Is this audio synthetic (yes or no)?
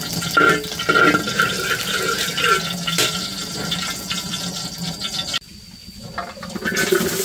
no